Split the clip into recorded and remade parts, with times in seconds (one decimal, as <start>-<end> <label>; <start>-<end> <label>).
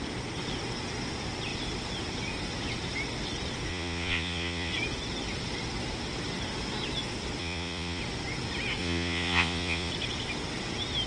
0.0-3.7 recorded; 3.7-4.7 remade; 4.7-7.4 recorded; 7.4-8.0 remade; 8.0-8.8 recorded; 8.8-9.9 remade; 9.9-11.1 recorded